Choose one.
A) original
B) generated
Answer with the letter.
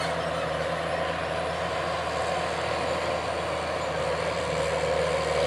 A